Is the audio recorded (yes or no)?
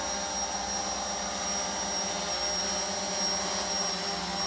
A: yes